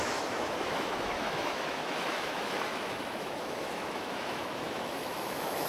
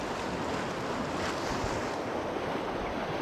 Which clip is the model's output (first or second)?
first